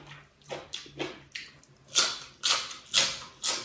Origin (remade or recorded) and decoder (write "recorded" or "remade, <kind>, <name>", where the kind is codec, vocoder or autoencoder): recorded